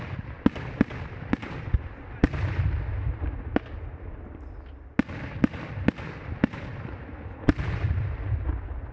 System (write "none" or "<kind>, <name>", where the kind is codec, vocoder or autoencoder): none